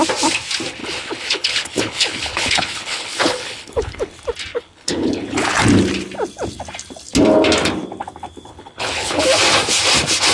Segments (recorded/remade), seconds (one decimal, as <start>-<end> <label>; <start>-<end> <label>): 0.0-0.8 recorded; 0.8-4.1 remade; 4.1-4.5 recorded; 4.5-5.6 remade; 5.6-8.5 recorded; 8.5-9.2 remade; 9.2-10.3 recorded